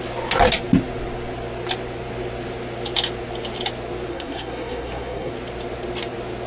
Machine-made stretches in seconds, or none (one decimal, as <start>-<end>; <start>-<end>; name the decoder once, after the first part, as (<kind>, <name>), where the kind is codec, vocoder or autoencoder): 4.1-5.3 (codec, SNAC)